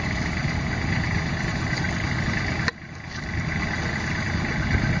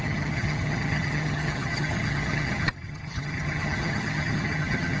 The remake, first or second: second